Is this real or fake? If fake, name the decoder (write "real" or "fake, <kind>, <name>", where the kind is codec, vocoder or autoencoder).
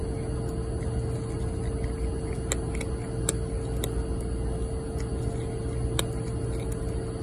real